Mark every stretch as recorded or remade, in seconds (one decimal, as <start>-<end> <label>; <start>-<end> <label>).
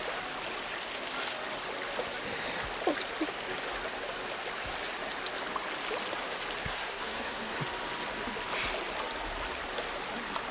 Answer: 0.0-6.6 recorded; 6.6-7.6 remade; 7.6-10.5 recorded